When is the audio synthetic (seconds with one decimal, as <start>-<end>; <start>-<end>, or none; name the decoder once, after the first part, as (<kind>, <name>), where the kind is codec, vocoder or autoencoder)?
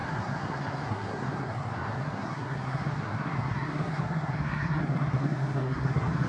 0.0-6.3 (codec, SNAC)